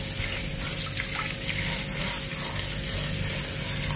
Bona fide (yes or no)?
yes